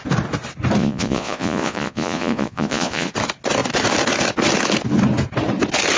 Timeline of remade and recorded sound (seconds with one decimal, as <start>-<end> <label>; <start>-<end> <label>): 0.0-0.8 recorded; 0.8-3.1 remade; 3.1-6.0 recorded